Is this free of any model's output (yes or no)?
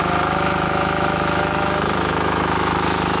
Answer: no